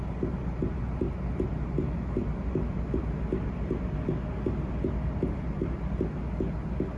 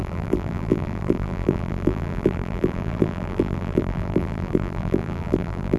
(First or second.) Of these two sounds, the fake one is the second